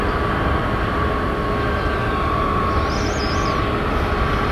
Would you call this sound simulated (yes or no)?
no